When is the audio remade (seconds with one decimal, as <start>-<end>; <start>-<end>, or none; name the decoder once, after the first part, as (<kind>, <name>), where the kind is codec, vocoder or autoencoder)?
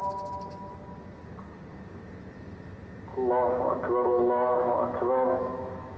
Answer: 3.1-6.0 (autoencoder, DAC-VAE)